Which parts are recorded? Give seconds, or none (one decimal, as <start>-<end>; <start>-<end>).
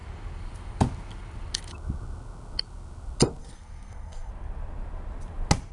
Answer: 0.0-3.4; 4.3-5.7